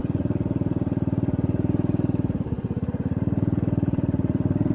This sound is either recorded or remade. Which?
recorded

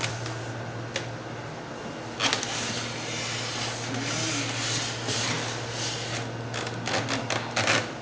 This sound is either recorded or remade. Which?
recorded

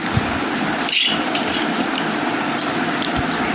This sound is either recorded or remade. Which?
recorded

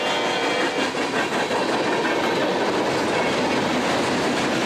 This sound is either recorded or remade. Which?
recorded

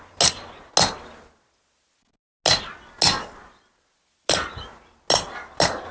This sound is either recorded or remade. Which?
recorded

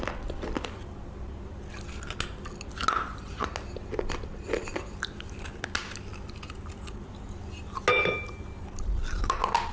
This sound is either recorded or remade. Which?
recorded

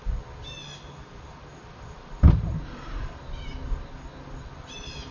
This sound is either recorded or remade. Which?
recorded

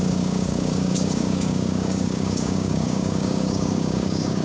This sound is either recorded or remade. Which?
remade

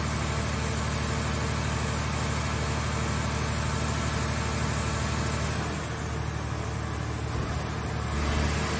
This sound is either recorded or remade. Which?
recorded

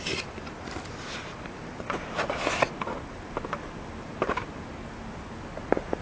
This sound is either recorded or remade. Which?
recorded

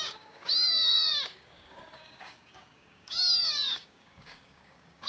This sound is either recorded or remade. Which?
remade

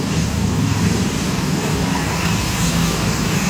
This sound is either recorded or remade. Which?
remade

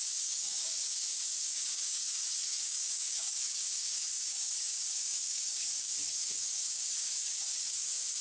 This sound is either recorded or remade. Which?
remade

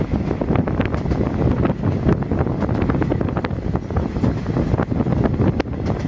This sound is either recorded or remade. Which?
recorded